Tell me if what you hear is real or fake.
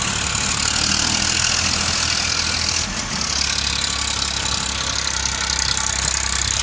real